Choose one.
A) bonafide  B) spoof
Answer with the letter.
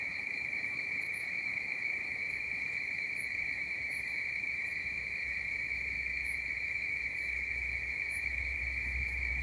B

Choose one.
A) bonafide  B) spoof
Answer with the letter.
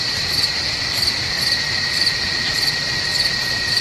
A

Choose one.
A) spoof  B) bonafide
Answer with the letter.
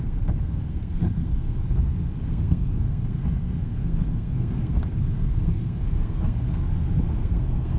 A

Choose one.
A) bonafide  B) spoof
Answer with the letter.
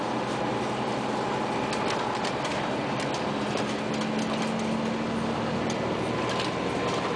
A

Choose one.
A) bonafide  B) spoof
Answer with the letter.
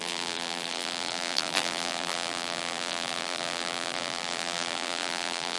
B